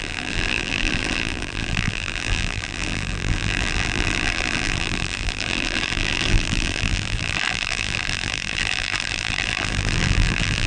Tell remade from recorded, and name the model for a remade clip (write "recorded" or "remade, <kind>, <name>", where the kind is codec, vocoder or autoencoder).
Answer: remade, vocoder, BigVGAN v2